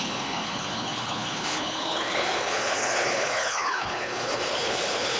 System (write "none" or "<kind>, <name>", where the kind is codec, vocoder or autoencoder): codec, HILCodec